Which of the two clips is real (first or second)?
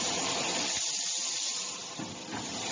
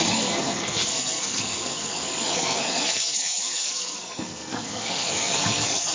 first